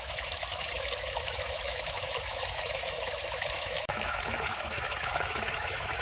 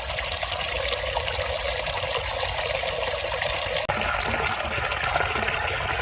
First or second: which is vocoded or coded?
first